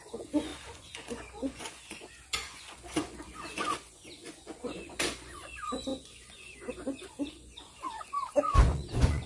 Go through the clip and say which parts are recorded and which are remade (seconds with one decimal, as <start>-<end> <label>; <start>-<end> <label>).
0.0-9.3 remade